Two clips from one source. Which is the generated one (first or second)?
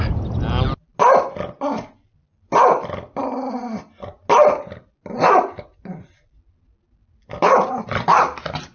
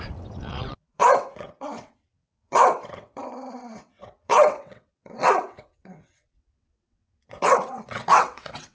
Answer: second